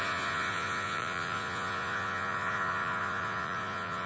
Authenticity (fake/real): fake